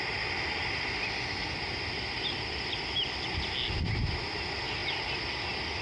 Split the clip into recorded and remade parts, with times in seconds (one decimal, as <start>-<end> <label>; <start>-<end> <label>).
0.0-5.8 recorded